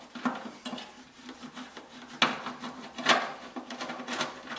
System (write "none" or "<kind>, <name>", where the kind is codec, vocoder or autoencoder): none